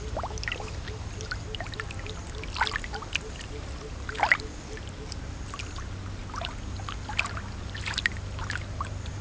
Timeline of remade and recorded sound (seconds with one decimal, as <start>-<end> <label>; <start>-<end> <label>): 0.0-9.2 recorded